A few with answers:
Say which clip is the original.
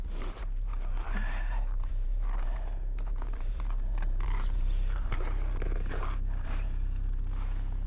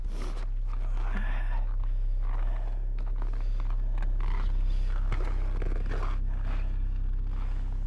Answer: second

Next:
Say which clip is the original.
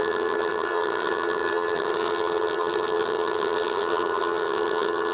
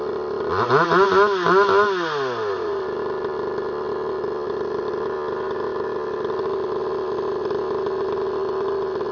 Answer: second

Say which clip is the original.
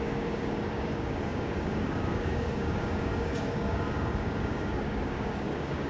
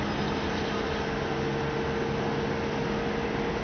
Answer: second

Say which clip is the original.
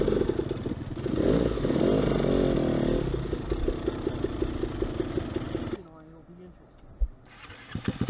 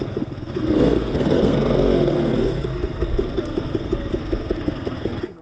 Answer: first